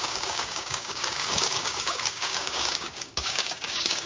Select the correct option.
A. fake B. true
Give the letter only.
A